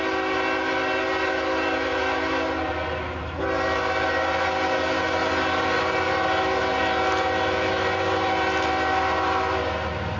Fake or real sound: real